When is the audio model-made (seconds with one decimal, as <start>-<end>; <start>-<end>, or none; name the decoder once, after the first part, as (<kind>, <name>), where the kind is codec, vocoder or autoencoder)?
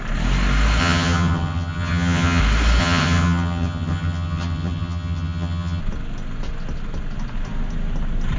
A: 0.8-2.4 (vocoder, HiFi-GAN); 2.8-5.8